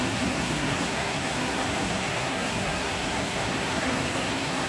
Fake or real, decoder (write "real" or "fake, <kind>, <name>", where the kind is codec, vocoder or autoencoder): fake, codec, SNAC